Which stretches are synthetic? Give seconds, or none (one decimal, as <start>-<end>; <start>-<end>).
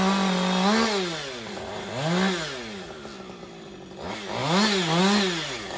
none